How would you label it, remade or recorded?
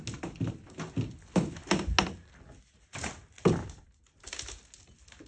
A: recorded